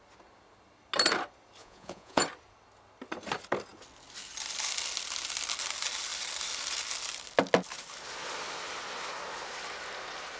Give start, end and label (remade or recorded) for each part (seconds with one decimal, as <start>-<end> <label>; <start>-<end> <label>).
0.0-1.6 recorded; 1.6-2.2 remade; 2.2-10.4 recorded